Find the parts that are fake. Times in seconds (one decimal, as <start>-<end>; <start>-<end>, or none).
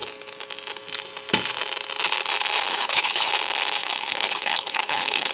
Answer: 2.7-3.3; 3.8-5.3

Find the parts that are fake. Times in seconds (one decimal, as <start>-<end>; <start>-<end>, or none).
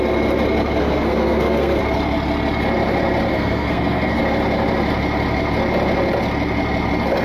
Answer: 0.8-1.8; 3.3-4.2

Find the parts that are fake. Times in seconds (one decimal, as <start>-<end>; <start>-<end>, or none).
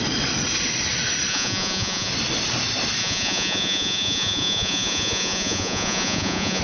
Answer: 1.3-2.1; 3.0-6.6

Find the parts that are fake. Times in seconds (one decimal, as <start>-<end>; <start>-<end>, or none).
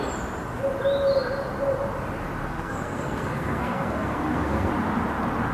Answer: 2.4-4.7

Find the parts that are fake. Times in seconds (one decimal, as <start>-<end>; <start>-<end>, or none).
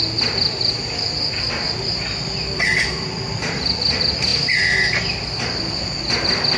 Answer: none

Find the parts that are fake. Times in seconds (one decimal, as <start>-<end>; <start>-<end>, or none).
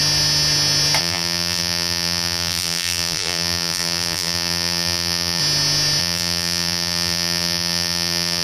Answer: 1.0-5.4; 6.0-8.4